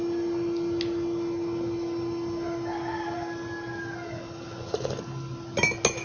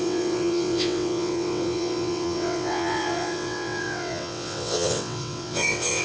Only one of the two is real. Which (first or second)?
first